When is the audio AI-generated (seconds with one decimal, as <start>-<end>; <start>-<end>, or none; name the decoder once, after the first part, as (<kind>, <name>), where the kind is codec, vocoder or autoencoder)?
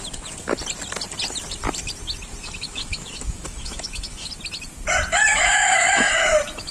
2.4-4.3 (autoencoder, DAC-VAE); 5.3-6.7